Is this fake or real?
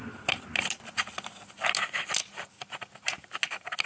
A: real